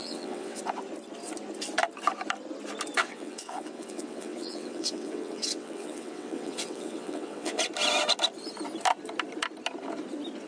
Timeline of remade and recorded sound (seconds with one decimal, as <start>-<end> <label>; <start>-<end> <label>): 0.0-0.6 remade; 0.6-3.0 recorded; 3.0-7.6 remade; 7.6-10.5 recorded